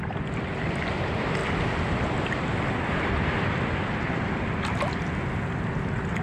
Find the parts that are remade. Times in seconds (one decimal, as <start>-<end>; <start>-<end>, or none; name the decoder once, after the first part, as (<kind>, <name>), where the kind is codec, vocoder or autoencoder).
none